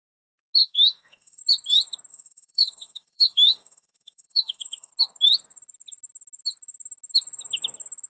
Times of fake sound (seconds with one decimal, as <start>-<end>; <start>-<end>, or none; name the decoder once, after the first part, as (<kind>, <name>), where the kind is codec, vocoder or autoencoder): 0.6-1.4 (autoencoder, DAC-VAE); 2.1-4.9